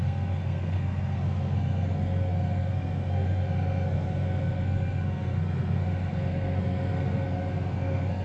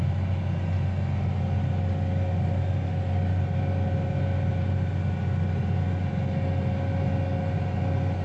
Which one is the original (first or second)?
second